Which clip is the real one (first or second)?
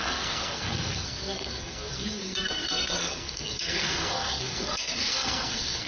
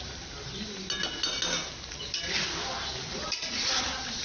second